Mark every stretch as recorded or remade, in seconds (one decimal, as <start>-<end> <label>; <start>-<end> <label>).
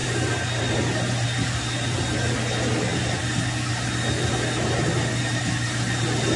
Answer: 0.0-6.4 recorded